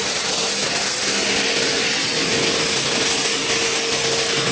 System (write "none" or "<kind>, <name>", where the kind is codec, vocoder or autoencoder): none